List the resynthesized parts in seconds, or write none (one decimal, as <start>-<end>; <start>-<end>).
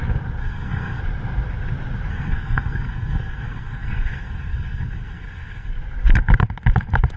0.4-1.0; 2.1-5.7